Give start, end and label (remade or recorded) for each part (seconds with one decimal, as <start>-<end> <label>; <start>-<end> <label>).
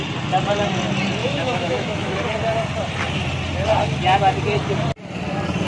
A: 0.0-1.2 recorded; 1.2-2.2 remade; 2.2-5.7 recorded